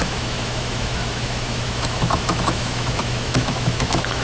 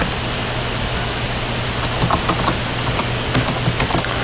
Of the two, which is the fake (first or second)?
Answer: first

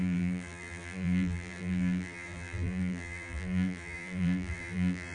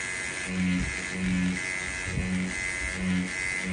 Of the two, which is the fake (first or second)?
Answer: first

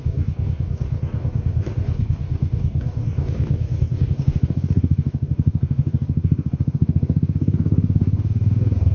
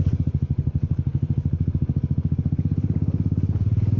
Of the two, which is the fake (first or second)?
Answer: first